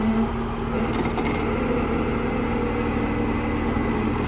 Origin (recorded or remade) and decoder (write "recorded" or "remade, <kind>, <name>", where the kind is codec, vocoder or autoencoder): recorded